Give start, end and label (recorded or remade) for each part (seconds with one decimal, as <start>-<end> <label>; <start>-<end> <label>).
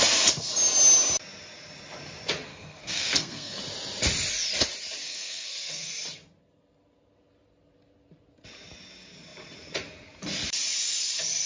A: 0.0-2.5 recorded; 2.5-3.6 remade; 3.6-5.0 recorded; 5.0-5.9 remade; 5.9-11.5 recorded